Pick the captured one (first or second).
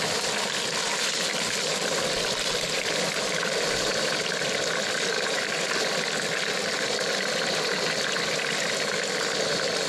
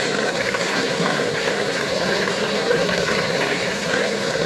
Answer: first